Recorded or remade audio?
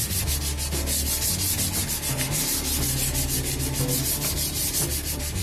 recorded